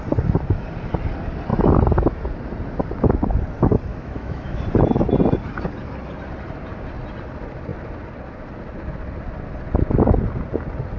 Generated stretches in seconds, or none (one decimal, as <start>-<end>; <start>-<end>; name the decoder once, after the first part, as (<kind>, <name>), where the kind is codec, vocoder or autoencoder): 3.9-4.6 (autoencoder, DAC-VAE)